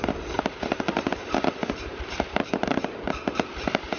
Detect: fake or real fake